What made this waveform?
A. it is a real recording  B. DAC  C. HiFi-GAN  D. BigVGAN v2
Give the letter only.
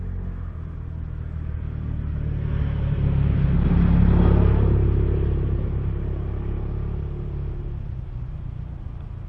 A